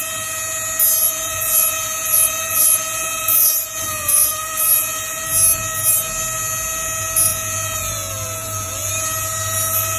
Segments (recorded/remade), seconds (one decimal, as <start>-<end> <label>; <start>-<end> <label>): 0.0-1.0 recorded; 1.0-5.2 remade; 5.2-7.3 recorded; 7.3-8.9 remade; 8.9-10.0 recorded